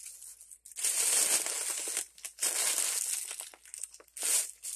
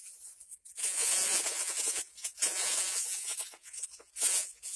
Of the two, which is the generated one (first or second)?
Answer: second